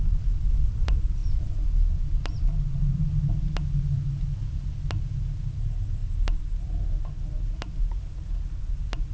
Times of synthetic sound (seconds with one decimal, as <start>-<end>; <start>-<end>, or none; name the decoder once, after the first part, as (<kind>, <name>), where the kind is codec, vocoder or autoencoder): none